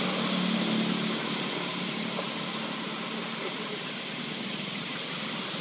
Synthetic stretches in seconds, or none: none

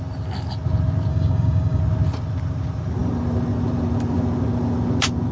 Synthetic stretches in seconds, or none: 1.1-1.8 (codec, DAC)

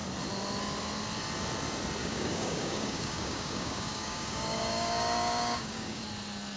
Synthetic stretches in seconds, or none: 2.0-6.0 (codec, DAC)

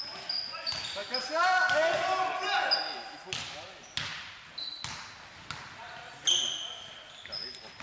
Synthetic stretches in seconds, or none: none